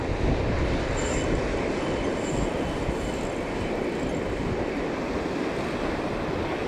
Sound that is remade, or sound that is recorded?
recorded